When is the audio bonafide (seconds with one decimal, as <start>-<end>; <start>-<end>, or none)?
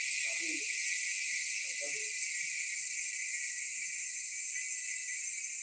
0.0-3.3; 4.5-5.6